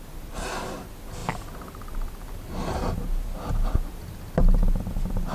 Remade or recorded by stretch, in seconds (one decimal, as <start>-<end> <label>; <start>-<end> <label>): 0.0-5.3 recorded